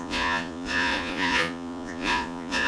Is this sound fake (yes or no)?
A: yes